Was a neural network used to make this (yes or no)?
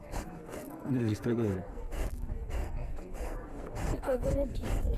yes